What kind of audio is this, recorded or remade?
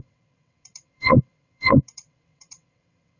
remade